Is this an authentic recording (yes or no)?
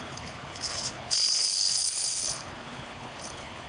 no